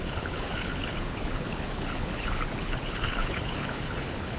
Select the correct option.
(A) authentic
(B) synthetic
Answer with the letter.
B